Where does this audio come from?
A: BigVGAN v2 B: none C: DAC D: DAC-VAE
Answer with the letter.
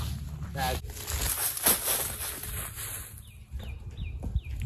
B